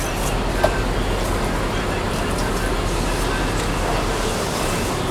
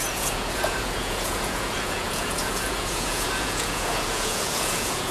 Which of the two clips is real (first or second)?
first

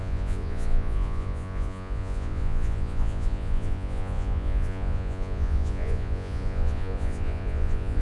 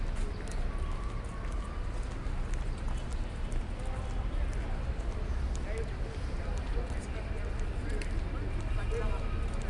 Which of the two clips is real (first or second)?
second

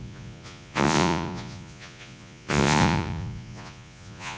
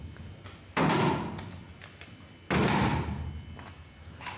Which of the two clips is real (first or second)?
second